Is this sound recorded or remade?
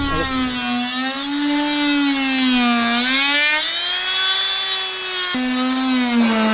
recorded